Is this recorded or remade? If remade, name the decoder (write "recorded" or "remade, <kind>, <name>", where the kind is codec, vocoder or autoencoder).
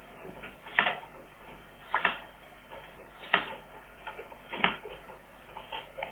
remade, codec, DAC